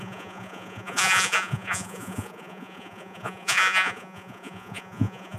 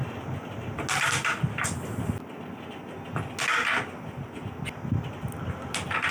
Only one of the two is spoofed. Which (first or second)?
first